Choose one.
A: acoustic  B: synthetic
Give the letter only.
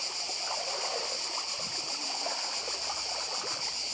A